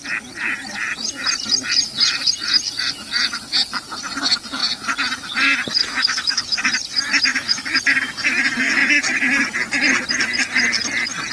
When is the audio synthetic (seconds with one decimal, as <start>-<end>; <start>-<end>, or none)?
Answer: 5.8-6.6; 7.3-7.8